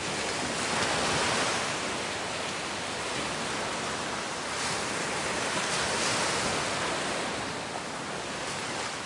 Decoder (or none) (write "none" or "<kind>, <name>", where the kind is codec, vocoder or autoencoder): none